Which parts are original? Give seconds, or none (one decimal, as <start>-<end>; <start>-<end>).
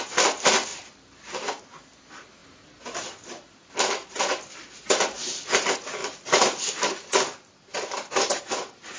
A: 0.0-0.7; 1.6-9.0